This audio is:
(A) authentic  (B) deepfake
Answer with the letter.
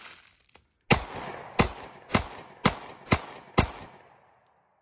A